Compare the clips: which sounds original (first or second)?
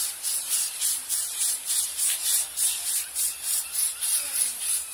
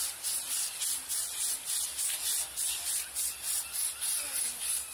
second